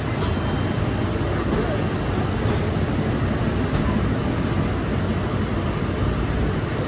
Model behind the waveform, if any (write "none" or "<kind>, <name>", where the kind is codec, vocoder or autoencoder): none